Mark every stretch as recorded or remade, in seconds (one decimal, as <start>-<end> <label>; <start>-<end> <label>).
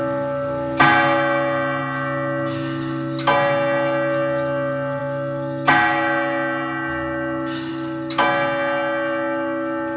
0.0-10.0 recorded